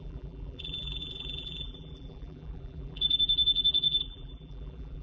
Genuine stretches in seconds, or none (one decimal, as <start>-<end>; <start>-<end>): none